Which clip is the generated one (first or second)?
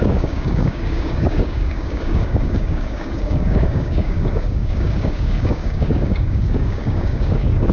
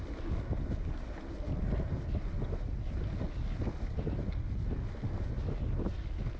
first